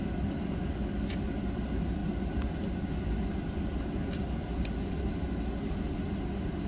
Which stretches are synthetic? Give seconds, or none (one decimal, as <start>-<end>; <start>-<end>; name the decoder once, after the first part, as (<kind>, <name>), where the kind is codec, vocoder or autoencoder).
none